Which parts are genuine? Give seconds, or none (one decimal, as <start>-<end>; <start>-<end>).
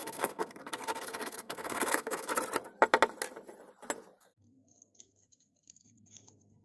2.3-4.2